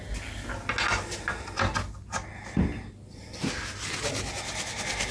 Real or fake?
real